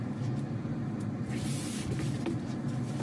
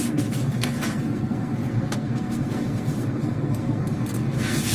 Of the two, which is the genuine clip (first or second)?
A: first